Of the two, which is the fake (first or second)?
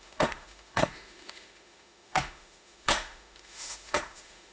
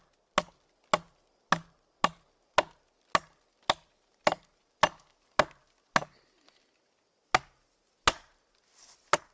first